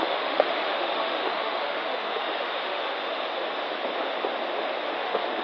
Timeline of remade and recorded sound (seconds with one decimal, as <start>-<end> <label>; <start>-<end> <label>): 0.0-3.0 remade; 3.0-4.9 recorded; 4.9-5.4 remade